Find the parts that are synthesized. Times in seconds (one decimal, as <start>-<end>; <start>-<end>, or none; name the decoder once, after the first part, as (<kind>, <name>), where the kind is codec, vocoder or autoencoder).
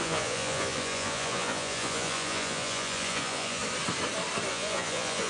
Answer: 0.0-3.6 (vocoder, Vocos); 4.5-5.3